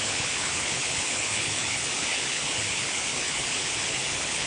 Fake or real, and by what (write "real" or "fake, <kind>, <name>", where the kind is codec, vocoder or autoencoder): fake, codec, HILCodec